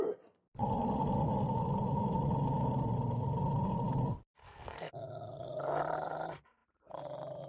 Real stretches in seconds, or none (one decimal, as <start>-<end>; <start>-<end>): 0.0-4.4; 4.9-7.5